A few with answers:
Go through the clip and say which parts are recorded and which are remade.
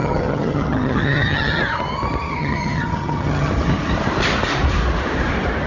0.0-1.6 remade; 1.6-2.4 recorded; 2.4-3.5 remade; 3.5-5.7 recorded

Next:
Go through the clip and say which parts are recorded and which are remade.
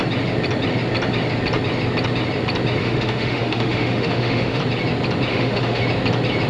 0.0-2.8 recorded; 2.8-4.6 remade; 4.6-5.3 recorded; 5.3-5.8 remade; 5.8-6.5 recorded